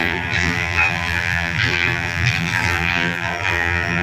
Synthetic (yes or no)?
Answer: yes